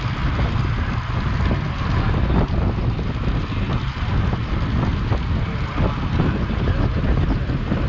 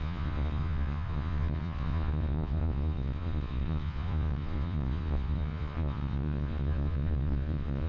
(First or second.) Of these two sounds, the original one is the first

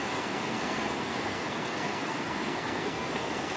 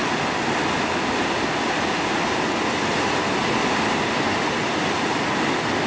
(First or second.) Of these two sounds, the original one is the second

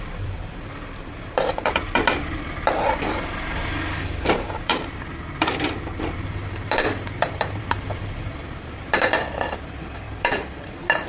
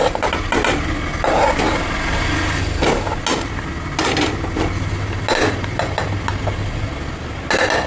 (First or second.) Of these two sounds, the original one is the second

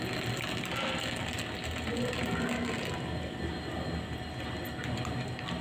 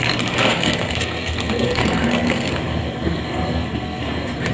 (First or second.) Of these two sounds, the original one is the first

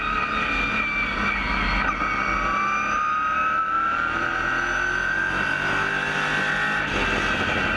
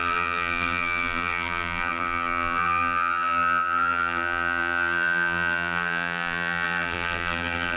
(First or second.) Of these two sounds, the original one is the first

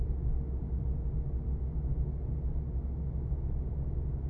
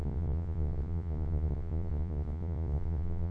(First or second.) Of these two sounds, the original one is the first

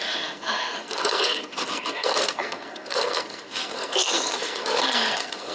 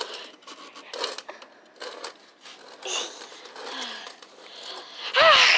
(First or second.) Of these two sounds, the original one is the second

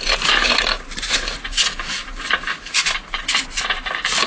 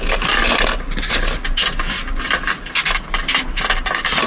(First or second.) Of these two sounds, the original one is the second